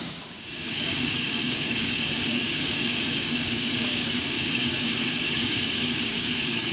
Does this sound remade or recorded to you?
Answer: remade